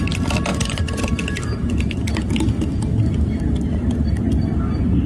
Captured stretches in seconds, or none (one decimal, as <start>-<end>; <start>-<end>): 0.0-0.5; 1.1-5.1